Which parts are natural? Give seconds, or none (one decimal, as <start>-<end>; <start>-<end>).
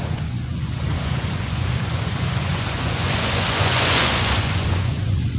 none